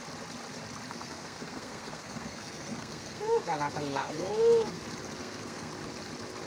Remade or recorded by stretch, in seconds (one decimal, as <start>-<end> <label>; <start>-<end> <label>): 0.0-0.9 recorded; 0.9-4.8 remade; 4.8-5.2 recorded; 5.2-5.7 remade; 5.7-6.5 recorded